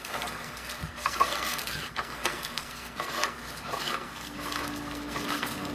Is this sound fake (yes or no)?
yes